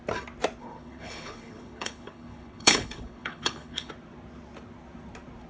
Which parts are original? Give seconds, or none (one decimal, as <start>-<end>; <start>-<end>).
0.0-0.6; 3.9-5.5